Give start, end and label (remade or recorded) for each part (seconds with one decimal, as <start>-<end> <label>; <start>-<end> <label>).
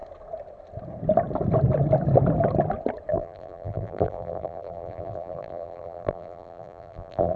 0.0-3.1 recorded; 3.1-7.4 remade